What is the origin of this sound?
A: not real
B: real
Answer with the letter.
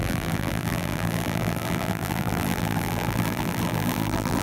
A